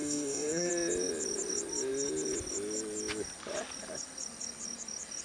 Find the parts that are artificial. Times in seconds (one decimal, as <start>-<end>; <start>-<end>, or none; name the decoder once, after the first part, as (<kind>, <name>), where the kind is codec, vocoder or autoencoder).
0.0-0.7 (codec, DAC)